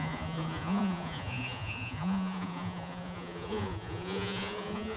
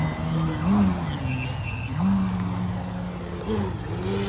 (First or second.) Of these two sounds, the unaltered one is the second